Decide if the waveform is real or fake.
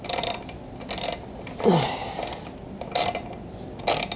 real